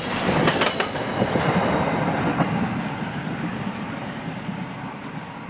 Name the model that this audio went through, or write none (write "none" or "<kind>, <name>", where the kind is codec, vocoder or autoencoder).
none